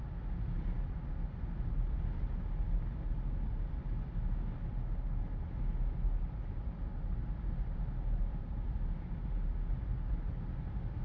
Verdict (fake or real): real